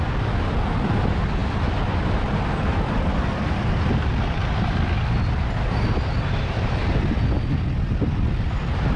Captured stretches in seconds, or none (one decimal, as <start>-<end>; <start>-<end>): 4.4-7.9